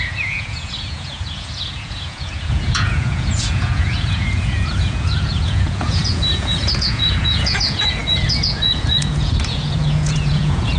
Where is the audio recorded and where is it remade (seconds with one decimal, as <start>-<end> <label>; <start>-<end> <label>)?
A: 0.0-10.8 remade